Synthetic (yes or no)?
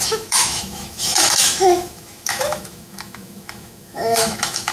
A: yes